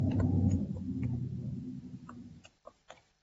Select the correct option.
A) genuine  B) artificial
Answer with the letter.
A